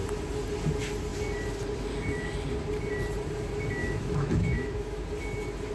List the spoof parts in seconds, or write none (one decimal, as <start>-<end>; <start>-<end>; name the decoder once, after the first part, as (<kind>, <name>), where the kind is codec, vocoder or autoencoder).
3.8-5.0 (autoencoder, DAC-VAE)